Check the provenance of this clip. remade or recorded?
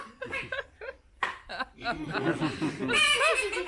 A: recorded